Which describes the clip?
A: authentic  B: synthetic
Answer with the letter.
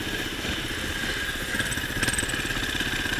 A